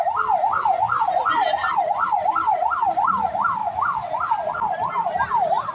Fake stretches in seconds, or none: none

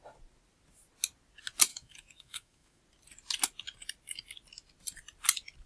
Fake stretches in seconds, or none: 1.7-2.8 (autoencoder, DAC-VAE)

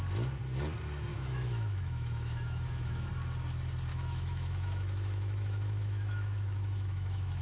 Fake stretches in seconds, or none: 1.1-3.1 (autoencoder, DAC-VAE); 3.9-7.4

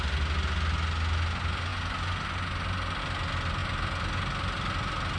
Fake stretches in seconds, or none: none

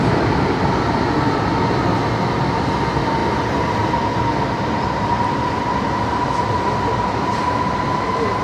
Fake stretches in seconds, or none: none

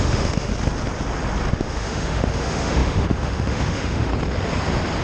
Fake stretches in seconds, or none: 0.0-0.5 (autoencoder, DAC-VAE); 1.5-4.1